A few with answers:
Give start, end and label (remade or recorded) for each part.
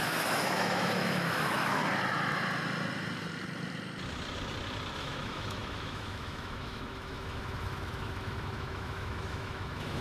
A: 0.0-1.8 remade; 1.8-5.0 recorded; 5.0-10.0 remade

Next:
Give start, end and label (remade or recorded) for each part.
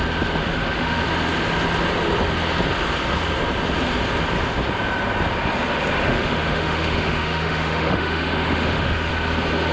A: 0.0-0.4 recorded; 0.4-1.0 remade; 1.0-6.0 recorded; 6.0-9.1 remade; 9.1-9.7 recorded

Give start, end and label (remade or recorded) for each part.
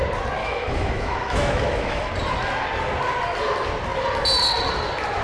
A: 0.0-0.4 recorded; 0.4-2.1 remade; 2.1-5.2 recorded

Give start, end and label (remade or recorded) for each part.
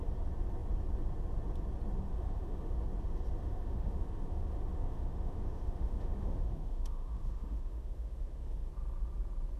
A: 0.0-2.1 recorded; 2.1-2.7 remade; 2.7-3.4 recorded; 3.4-8.7 remade; 8.7-9.6 recorded